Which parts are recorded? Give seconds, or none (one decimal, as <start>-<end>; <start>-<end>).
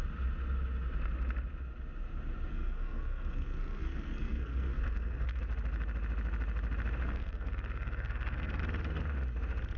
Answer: 0.0-2.5; 5.4-7.0; 8.6-9.8